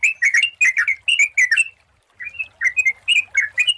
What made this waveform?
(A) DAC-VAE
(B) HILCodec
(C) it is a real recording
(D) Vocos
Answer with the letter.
C